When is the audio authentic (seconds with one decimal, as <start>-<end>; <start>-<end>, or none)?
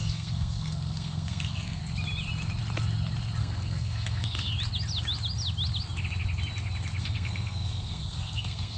1.8-3.4; 4.5-7.0